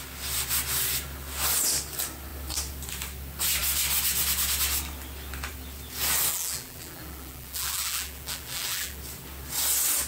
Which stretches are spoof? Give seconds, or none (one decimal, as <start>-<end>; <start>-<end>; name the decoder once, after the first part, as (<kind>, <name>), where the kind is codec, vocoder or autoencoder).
6.3-9.0 (vocoder, BigVGAN v2)